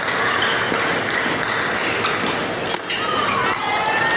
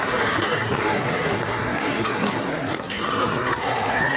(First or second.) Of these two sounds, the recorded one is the first